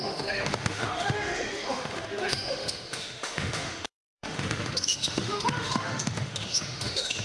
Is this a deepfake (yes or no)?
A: yes